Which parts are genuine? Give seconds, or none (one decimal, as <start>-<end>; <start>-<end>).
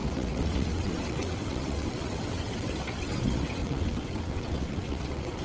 none